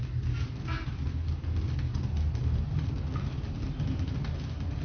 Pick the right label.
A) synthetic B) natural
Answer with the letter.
B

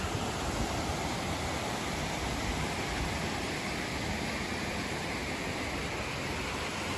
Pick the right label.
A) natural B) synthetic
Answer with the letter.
A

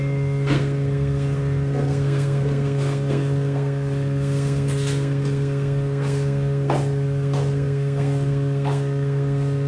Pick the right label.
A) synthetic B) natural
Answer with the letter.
A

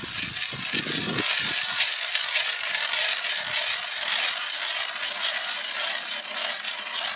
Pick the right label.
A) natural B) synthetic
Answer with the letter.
A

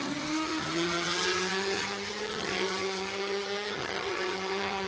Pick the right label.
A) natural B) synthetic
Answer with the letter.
B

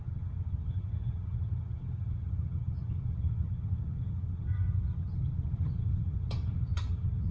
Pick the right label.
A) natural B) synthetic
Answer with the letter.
B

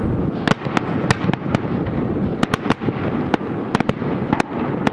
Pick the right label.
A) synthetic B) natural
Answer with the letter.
B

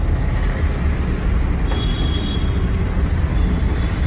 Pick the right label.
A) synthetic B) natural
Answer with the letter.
B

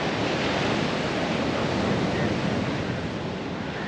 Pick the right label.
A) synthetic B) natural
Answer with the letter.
B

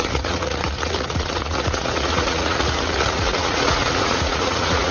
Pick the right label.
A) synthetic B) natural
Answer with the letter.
A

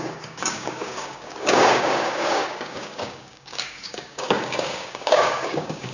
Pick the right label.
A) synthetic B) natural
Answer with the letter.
A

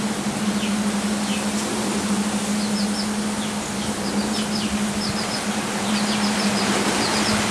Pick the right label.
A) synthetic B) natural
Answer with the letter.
B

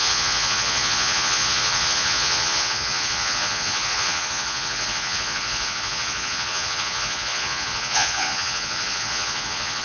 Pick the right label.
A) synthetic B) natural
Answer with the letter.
A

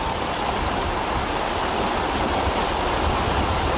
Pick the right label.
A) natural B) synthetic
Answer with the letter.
A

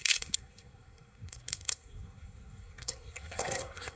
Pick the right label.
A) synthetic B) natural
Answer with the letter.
A